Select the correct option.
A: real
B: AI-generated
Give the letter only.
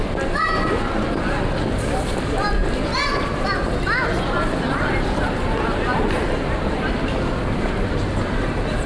B